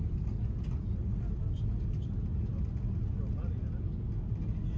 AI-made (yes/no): no